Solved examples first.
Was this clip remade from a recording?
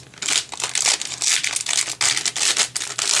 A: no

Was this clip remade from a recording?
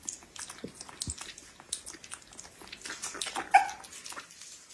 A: no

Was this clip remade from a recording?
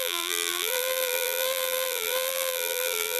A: yes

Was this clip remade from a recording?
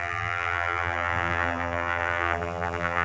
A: yes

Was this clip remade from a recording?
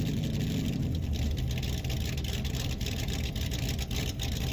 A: yes